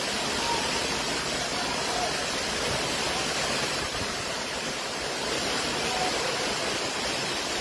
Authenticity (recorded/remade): recorded